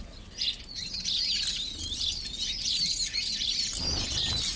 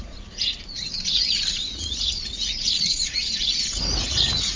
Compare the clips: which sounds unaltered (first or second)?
first